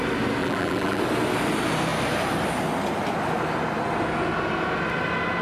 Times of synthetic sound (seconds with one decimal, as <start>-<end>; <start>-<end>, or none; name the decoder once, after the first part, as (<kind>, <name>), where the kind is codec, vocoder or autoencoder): 0.4-1.0 (vocoder, BigVGAN v2)